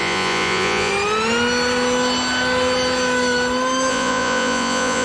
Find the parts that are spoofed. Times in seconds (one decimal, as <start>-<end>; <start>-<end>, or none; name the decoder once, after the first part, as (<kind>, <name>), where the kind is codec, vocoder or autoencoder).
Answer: 0.0-0.9 (vocoder, Vocos); 3.9-5.0